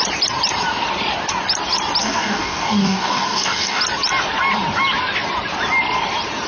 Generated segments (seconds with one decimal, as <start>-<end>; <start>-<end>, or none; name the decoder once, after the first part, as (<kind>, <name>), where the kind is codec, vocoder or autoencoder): 2.0-3.8 (codec, DAC)